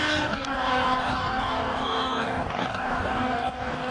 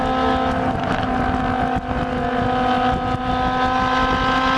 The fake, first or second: first